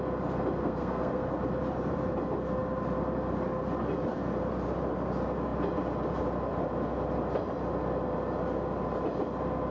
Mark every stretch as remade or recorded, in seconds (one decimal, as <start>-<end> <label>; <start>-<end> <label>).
0.0-0.6 recorded; 0.6-1.3 remade; 1.3-9.7 recorded

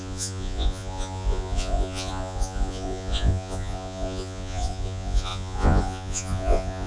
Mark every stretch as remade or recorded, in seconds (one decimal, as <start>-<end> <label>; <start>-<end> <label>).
0.0-6.9 remade

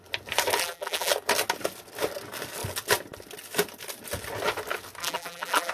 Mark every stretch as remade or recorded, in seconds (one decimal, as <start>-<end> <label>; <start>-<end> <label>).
0.0-0.6 recorded; 0.6-1.1 remade; 1.1-5.0 recorded; 5.0-5.7 remade

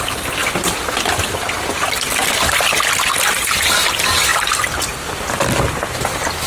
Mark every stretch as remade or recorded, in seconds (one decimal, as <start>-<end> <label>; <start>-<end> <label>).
0.0-6.5 recorded

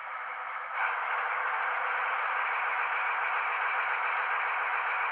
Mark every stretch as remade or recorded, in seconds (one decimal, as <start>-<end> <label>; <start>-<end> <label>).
0.0-1.0 remade; 1.0-5.1 recorded

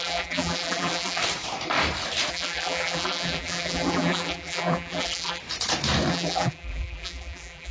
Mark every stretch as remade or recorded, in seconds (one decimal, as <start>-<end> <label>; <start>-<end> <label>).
0.0-1.2 remade; 1.2-2.3 recorded; 2.3-5.4 remade; 5.4-6.1 recorded; 6.1-7.7 remade